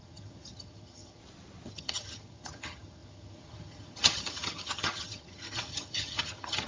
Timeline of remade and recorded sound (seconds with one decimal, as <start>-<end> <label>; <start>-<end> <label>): 0.0-1.2 remade; 1.2-1.7 recorded; 1.7-6.7 remade